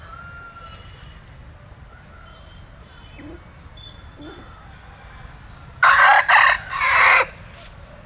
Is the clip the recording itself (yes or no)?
yes